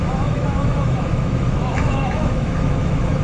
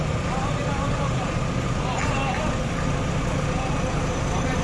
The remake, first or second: first